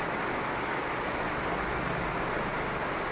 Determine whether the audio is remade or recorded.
recorded